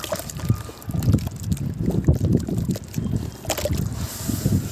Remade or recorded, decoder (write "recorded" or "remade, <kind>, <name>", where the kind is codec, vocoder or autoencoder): recorded